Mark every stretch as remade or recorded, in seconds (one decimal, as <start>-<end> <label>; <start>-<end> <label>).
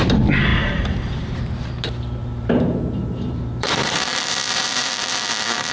0.0-0.5 recorded; 0.5-1.4 remade; 1.4-2.2 recorded; 2.2-5.7 remade